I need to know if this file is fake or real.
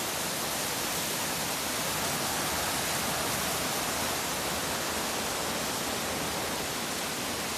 real